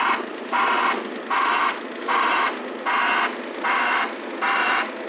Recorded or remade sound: recorded